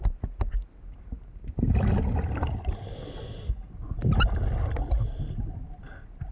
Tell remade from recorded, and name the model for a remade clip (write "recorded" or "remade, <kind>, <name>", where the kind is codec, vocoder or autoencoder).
recorded